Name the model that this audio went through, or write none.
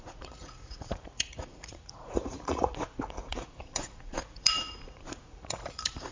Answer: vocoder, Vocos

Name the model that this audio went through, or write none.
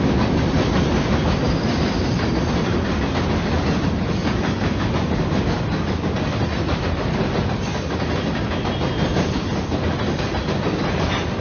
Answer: none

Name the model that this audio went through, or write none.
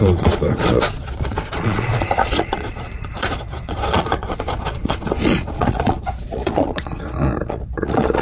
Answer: vocoder, Vocos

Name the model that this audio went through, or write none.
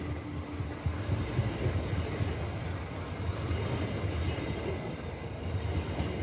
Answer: none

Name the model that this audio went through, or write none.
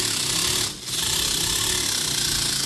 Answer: none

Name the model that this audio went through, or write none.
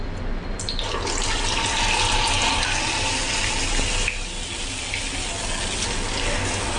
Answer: none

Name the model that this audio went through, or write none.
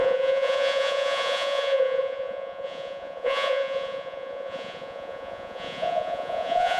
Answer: vocoder, Vocos